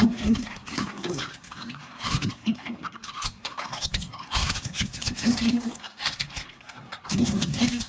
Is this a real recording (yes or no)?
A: no